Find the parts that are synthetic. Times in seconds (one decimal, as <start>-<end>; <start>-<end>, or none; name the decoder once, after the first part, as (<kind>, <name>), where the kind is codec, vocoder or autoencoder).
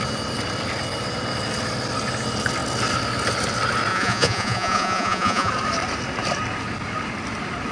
3.9-5.5 (vocoder, Vocos)